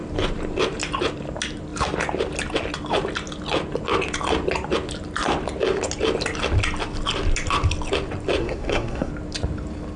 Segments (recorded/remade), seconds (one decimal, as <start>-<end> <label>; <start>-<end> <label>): 0.0-8.4 recorded; 8.4-9.1 remade; 9.1-10.0 recorded